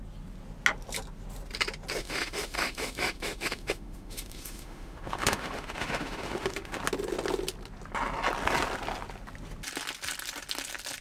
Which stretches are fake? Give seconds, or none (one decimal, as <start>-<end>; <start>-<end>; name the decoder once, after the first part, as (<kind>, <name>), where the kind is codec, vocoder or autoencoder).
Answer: 2.0-6.8 (autoencoder, DAC-VAE)